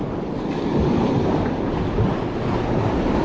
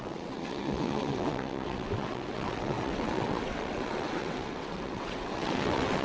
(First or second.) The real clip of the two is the first